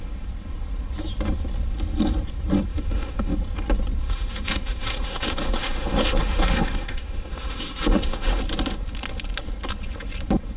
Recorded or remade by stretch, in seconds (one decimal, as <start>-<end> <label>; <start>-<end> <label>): 0.0-2.7 recorded; 2.7-3.3 remade; 3.3-4.0 recorded; 4.0-8.4 remade; 8.4-10.6 recorded